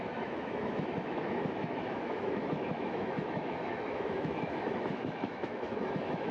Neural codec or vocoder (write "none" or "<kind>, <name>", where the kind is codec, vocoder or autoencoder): autoencoder, DAC-VAE